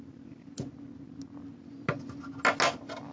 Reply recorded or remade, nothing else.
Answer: recorded